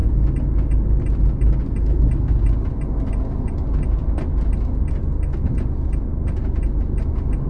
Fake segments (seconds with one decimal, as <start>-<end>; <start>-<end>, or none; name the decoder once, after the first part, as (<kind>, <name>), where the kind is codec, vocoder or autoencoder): none